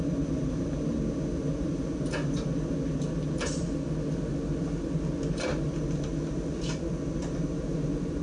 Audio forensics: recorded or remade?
recorded